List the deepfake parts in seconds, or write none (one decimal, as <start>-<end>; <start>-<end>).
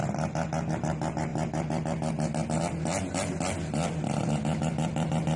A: none